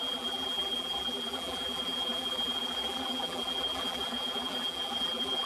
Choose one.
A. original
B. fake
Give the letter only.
B